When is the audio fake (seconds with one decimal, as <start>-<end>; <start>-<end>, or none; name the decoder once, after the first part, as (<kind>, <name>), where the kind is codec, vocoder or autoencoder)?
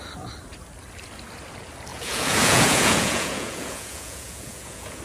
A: 1.9-5.0 (vocoder, Vocos)